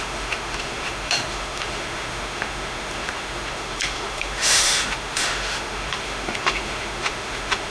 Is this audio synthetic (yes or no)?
yes